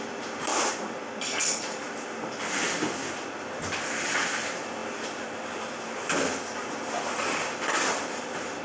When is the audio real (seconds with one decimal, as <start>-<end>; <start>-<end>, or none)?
0.0-8.6

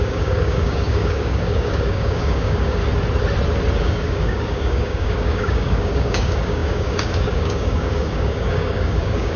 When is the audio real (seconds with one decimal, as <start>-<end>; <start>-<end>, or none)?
2.8-3.8

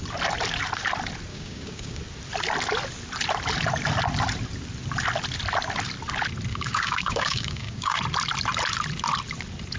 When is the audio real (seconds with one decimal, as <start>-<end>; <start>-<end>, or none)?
0.0-1.3; 2.0-6.5; 8.0-9.8

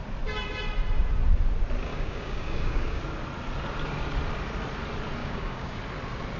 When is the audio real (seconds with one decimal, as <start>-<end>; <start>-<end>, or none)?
0.0-1.9; 3.0-5.2; 5.8-6.4

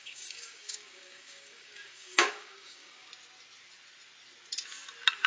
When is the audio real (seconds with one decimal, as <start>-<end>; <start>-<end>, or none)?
3.1-5.3

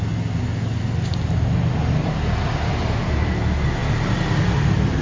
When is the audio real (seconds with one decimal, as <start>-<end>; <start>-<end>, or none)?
0.0-5.0

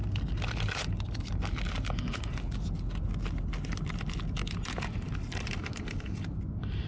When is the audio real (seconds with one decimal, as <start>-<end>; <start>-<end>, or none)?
0.0-6.9

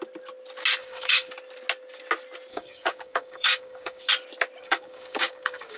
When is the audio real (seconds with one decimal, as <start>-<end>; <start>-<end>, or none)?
0.0-0.8; 1.3-2.5; 4.1-4.6